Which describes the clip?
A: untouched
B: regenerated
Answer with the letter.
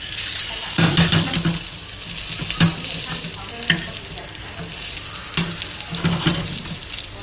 A